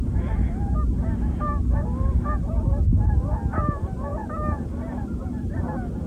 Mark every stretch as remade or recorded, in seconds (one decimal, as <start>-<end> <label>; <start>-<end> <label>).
0.0-6.1 recorded